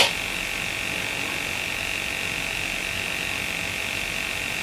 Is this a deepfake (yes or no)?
no